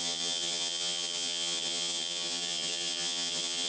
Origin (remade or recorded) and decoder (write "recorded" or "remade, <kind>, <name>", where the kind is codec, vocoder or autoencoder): remade, vocoder, HiFi-GAN